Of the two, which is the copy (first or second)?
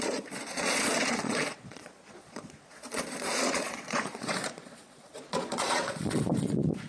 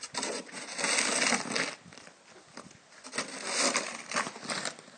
first